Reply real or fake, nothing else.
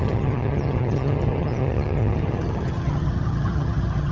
fake